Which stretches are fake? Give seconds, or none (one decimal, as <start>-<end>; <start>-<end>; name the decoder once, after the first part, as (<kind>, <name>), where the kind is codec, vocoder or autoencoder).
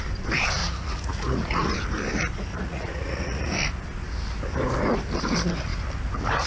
0.6-1.7 (vocoder, Vocos); 2.5-3.5